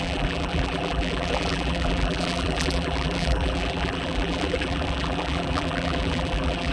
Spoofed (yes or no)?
yes